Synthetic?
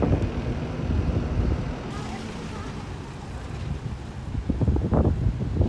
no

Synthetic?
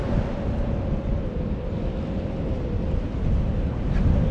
no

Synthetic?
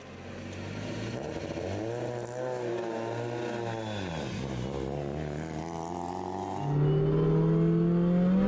no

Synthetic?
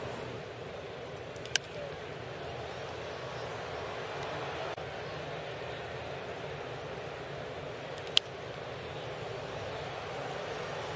no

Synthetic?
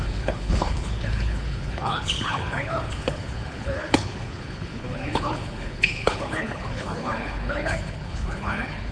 yes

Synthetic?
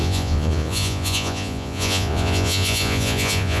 yes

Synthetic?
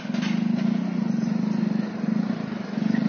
no